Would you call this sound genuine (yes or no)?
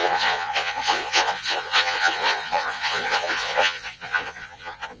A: no